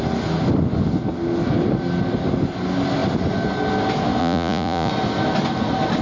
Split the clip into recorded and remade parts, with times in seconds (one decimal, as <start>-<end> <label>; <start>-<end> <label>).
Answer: 0.0-4.2 recorded; 4.2-4.9 remade; 4.9-6.0 recorded